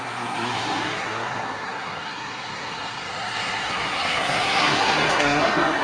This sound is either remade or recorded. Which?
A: remade